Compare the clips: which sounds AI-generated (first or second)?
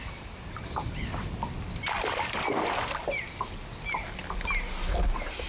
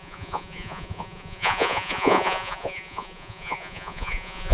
second